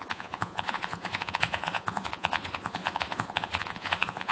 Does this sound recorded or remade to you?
remade